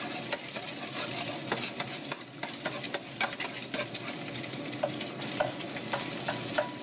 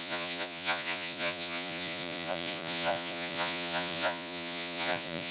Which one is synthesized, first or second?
second